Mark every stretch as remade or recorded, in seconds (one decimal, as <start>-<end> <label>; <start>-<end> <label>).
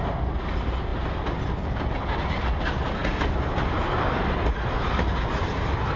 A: 0.0-6.0 recorded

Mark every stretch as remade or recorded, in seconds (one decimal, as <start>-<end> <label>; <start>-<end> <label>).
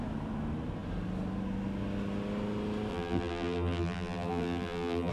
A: 0.0-2.9 recorded; 2.9-5.1 remade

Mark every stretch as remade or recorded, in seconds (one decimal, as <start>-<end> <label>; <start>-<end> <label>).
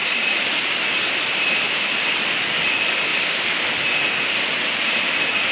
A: 0.0-0.6 remade; 0.6-5.5 recorded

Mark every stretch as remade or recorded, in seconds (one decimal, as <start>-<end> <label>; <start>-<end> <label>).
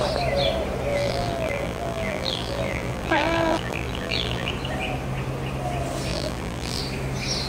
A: 0.0-0.9 recorded; 0.9-4.5 remade; 4.5-6.1 recorded; 6.1-6.8 remade; 6.8-7.5 recorded